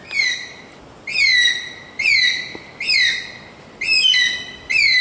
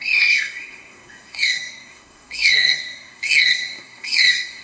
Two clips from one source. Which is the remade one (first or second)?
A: second